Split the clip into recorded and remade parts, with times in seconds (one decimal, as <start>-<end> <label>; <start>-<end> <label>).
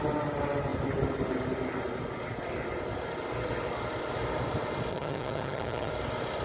0.0-4.9 recorded; 4.9-5.9 remade; 5.9-6.4 recorded